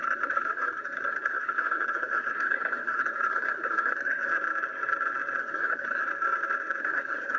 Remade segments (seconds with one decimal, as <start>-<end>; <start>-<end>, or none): 0.0-4.3; 5.4-6.0; 6.8-7.4